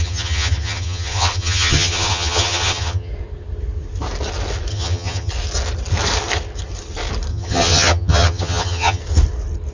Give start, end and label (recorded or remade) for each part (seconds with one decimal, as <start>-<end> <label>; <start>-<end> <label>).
0.0-3.1 remade; 3.1-4.7 recorded; 4.7-5.3 remade; 5.3-7.3 recorded; 7.3-9.0 remade; 9.0-9.7 recorded